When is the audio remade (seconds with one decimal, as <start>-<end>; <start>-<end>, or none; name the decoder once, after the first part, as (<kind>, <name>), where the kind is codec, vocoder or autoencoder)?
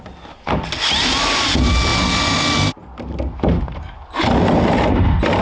none